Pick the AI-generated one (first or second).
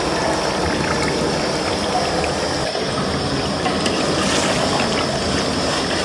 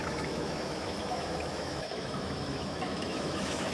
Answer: second